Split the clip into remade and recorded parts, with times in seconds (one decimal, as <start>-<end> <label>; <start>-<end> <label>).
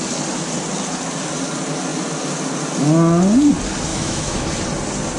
0.0-3.9 recorded; 3.9-4.5 remade; 4.5-5.2 recorded